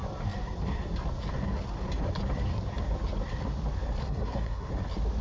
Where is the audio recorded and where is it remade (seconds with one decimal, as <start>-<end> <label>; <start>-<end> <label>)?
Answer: 0.0-4.0 recorded; 4.0-4.7 remade; 4.7-5.2 recorded